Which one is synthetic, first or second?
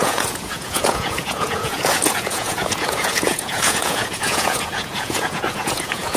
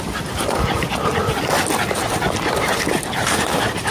first